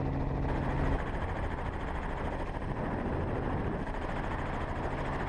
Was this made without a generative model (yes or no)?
yes